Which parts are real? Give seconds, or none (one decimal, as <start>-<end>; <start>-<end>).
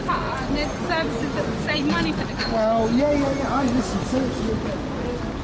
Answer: 0.0-5.4